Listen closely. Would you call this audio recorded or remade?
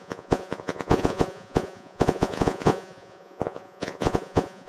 remade